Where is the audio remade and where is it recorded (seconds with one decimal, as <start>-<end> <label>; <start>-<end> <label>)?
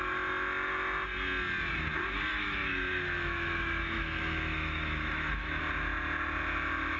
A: 0.0-2.3 recorded; 2.3-5.6 remade; 5.6-7.0 recorded